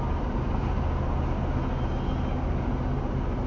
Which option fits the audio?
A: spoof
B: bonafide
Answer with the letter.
B